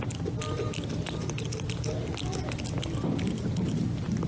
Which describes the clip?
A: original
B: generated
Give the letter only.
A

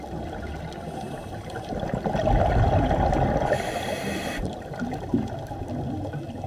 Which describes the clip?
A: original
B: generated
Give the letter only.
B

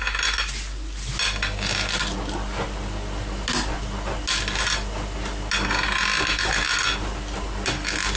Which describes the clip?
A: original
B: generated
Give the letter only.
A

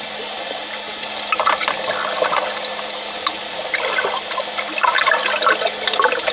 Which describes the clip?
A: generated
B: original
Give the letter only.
B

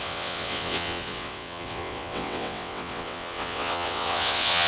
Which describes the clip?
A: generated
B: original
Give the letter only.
A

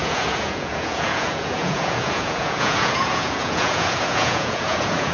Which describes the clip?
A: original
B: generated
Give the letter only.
B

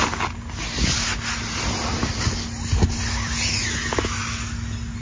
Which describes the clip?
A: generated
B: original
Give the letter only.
B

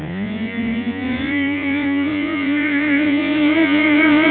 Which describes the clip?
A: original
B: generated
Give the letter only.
B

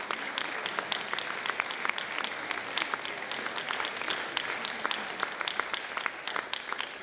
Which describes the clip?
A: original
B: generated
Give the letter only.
A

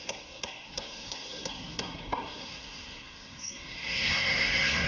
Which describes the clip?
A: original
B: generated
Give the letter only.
B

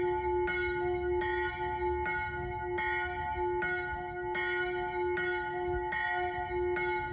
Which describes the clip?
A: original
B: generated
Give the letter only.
A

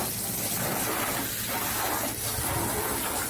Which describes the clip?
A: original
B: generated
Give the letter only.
A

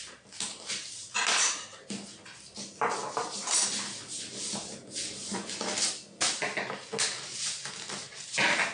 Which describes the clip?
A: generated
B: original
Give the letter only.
B